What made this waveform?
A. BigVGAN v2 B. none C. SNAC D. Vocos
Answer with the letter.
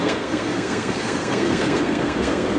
C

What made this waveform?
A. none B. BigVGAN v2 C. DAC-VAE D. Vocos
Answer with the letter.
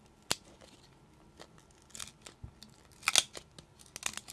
A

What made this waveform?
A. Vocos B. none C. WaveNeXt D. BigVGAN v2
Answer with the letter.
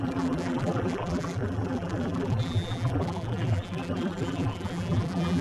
D